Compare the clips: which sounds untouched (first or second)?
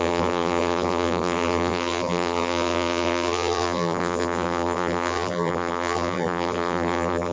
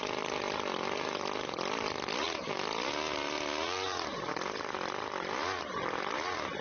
second